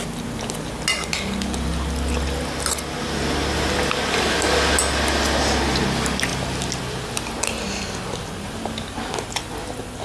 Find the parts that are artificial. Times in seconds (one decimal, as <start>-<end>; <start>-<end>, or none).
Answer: none